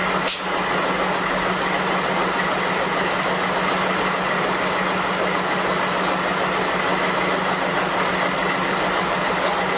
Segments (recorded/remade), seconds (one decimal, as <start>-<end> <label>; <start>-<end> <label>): 0.0-9.8 recorded